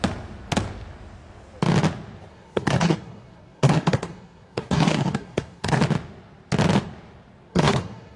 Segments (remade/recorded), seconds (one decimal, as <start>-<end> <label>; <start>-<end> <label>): 0.0-2.3 recorded; 2.3-5.8 remade; 5.8-7.5 recorded; 7.5-8.2 remade